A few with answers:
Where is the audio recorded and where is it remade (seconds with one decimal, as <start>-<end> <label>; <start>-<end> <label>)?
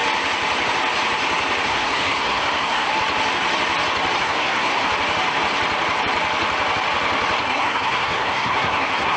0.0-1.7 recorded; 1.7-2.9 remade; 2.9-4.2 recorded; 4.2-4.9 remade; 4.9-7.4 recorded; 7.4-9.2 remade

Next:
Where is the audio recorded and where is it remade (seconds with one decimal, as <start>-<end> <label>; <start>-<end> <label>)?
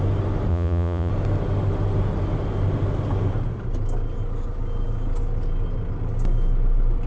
0.0-0.5 recorded; 0.5-1.1 remade; 1.1-7.1 recorded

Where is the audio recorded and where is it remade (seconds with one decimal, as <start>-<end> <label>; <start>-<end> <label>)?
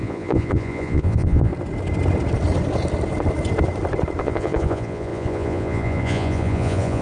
0.0-1.5 remade; 1.5-4.2 recorded; 4.2-7.0 remade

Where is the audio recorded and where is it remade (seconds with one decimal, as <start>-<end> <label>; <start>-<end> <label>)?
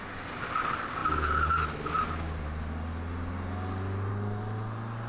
0.0-5.1 recorded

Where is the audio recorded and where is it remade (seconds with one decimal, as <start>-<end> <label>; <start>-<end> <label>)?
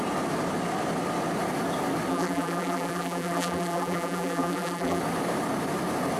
0.0-2.1 recorded; 2.1-5.0 remade; 5.0-6.2 recorded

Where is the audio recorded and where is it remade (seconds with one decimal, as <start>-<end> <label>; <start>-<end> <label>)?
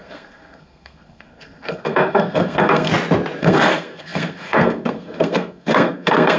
0.0-2.9 remade; 2.9-3.4 recorded; 3.4-6.4 remade